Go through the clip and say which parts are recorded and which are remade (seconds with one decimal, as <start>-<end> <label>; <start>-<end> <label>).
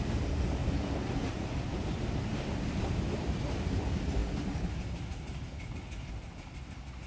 0.0-0.6 recorded; 0.6-1.5 remade; 1.5-3.2 recorded; 3.2-3.8 remade; 3.8-7.1 recorded